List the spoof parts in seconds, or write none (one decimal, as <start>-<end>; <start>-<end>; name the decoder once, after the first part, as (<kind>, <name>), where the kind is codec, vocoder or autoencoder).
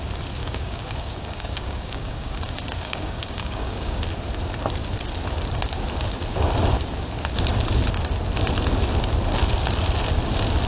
0.4-4.0 (codec, DAC)